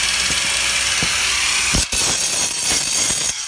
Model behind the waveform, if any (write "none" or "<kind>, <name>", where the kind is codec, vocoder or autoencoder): none